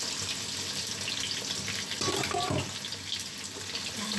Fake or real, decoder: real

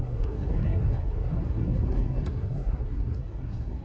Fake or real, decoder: fake, codec, SNAC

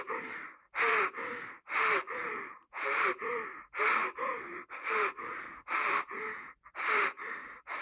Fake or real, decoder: fake, vocoder, BigVGAN v2